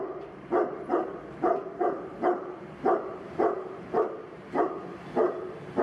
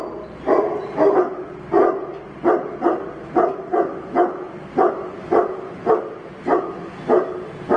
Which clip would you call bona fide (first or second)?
second